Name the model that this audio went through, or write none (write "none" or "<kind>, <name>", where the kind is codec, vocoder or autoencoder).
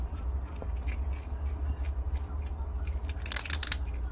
none